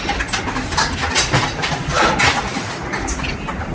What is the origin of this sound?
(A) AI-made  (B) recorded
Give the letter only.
B